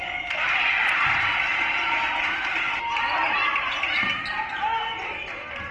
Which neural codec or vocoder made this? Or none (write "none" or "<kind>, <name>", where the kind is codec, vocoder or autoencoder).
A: none